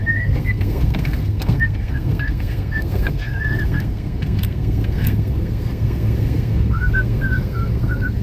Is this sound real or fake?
fake